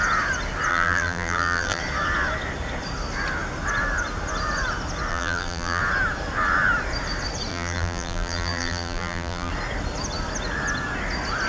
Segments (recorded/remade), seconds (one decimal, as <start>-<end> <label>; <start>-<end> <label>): 0.0-0.7 recorded; 0.7-1.8 remade; 1.8-5.1 recorded; 5.1-5.8 remade; 5.8-7.5 recorded; 7.5-9.5 remade; 9.5-11.5 recorded